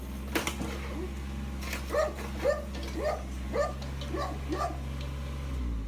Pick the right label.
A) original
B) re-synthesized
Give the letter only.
A